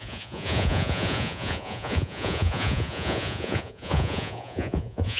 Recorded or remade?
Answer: remade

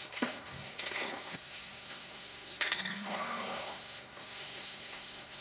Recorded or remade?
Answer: remade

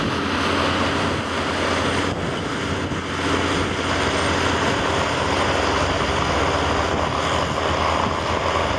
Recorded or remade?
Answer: recorded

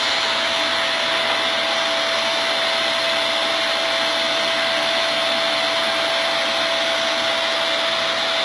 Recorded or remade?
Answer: recorded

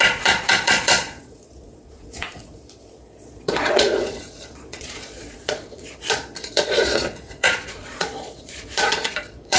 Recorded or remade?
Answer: remade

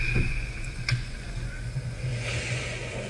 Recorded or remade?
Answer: remade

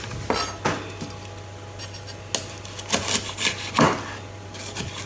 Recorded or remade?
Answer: recorded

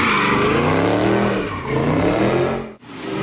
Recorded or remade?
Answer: recorded